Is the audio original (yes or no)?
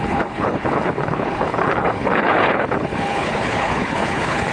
no